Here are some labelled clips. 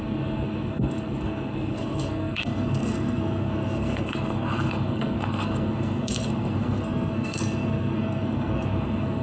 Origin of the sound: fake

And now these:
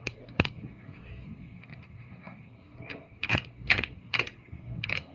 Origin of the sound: fake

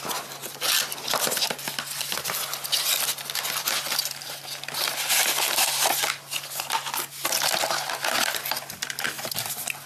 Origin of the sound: real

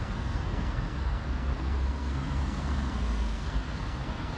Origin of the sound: fake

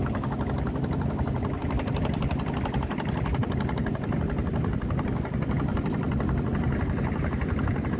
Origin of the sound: real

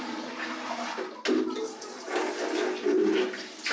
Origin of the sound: real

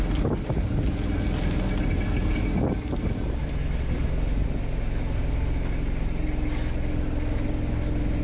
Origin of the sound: real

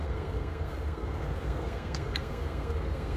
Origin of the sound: fake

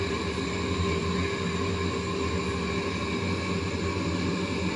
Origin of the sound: real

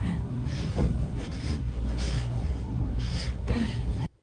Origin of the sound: fake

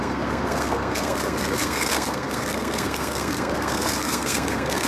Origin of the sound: fake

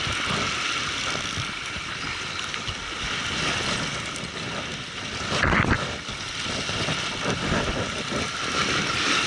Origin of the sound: real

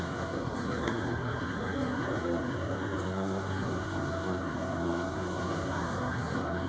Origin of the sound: fake